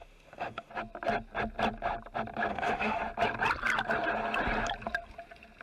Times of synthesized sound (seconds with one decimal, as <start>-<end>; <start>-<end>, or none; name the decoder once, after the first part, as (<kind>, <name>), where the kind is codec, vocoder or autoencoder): 0.0-0.7 (autoencoder, DAC-VAE); 2.5-3.0